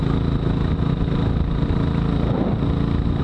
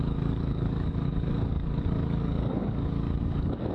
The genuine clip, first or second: first